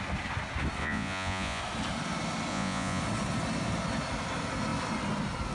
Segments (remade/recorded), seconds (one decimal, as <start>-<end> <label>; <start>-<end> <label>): 0.0-0.8 recorded; 0.8-1.6 remade; 1.6-2.5 recorded; 2.5-3.0 remade; 3.0-5.5 recorded